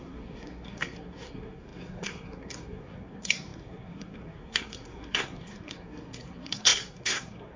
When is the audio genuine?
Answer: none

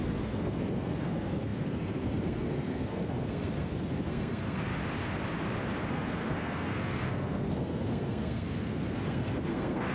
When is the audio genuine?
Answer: 4.7-5.9

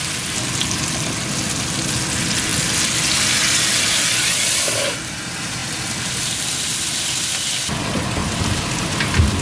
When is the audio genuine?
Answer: 0.0-9.4

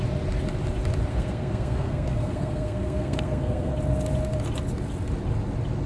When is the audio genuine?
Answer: 0.0-1.1; 3.7-5.9

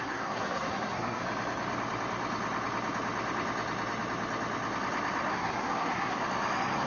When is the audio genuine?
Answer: 1.2-5.3; 6.2-6.9

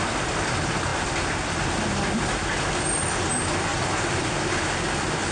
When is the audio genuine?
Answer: 0.0-5.3

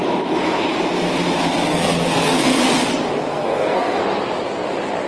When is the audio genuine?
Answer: 0.0-1.7; 2.7-3.3; 4.0-5.1

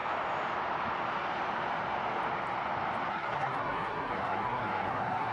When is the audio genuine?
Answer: 0.0-3.1